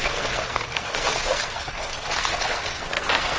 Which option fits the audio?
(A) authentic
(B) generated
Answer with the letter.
B